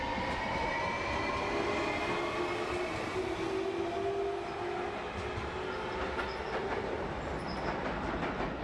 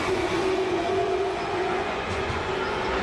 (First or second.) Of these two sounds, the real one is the first